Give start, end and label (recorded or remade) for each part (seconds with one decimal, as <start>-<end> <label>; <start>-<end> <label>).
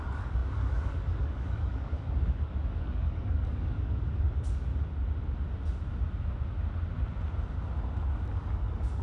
0.0-4.7 remade; 4.7-8.3 recorded; 8.3-9.0 remade